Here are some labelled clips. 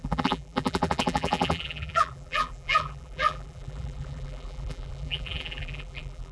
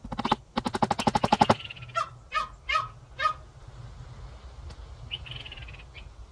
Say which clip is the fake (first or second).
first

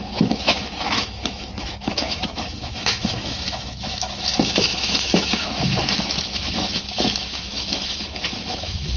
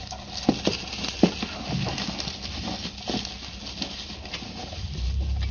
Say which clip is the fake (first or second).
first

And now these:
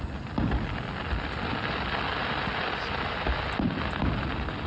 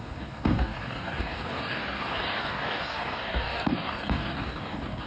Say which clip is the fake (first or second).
second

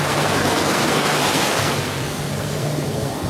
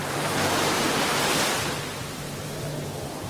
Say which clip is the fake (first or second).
first